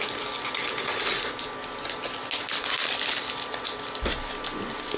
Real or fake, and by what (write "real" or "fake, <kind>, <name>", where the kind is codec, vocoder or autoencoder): real